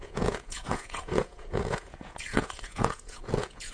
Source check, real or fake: fake